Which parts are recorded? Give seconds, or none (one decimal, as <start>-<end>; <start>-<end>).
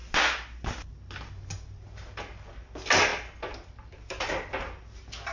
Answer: 0.0-5.3